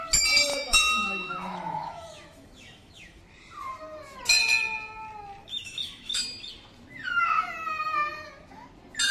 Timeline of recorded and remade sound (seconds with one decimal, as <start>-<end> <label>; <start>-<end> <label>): 0.0-0.5 recorded; 0.5-3.2 remade; 3.2-5.4 recorded; 5.4-6.2 remade; 6.2-9.1 recorded